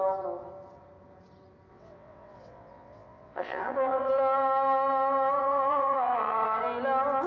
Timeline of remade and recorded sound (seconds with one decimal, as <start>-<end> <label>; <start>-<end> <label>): 0.0-1.7 recorded; 1.7-4.1 remade; 4.1-5.4 recorded; 5.4-6.6 remade; 6.6-7.3 recorded